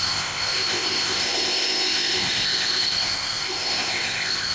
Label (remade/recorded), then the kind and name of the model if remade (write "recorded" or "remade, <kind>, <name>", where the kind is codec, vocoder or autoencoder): remade, codec, ZipCodec